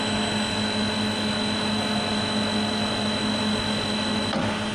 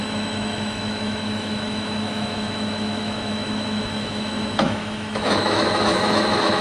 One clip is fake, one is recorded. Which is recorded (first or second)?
first